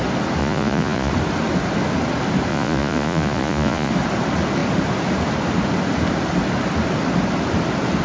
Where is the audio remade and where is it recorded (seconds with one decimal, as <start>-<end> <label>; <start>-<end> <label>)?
0.0-0.4 recorded; 0.4-1.1 remade; 1.1-2.5 recorded; 2.5-3.9 remade; 3.9-8.0 recorded